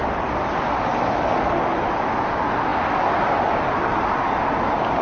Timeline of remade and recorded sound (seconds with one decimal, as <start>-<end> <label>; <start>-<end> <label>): 0.0-5.0 recorded